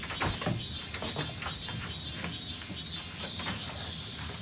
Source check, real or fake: real